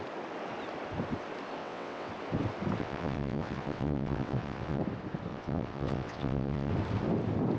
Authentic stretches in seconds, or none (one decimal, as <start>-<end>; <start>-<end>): 0.0-1.6; 2.1-2.8; 4.8-5.3; 6.7-7.6